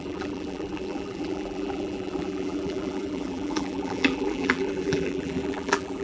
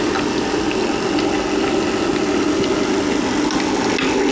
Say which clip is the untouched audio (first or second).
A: second